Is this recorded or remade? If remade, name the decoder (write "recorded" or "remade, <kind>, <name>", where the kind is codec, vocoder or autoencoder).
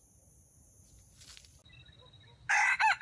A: recorded